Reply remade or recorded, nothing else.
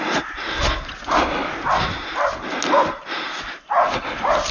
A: recorded